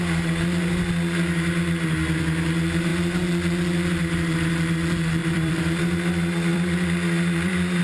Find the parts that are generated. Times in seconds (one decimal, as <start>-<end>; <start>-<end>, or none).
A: 5.2-5.8; 6.5-7.8